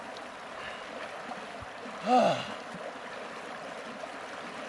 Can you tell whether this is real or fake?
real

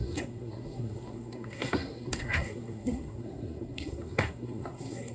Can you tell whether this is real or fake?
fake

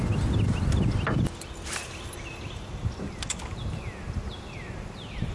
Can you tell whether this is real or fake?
real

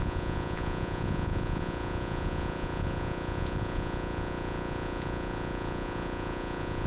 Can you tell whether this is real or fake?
fake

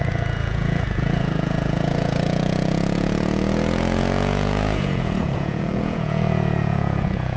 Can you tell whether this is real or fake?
fake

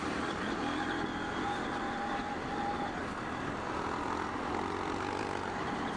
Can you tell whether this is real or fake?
real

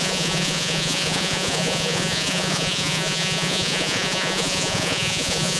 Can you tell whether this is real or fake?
fake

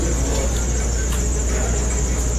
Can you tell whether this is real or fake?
real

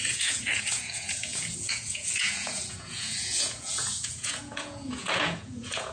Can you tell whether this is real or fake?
fake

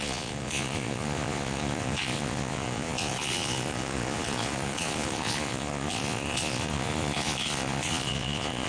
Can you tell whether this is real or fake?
fake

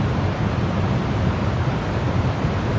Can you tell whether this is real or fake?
fake